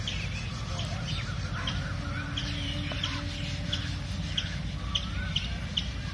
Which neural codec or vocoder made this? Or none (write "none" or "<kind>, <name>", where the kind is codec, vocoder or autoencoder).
none